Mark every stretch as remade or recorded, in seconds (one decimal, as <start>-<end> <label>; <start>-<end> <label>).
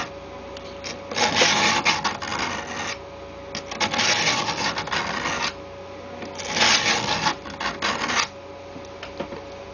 0.0-9.7 recorded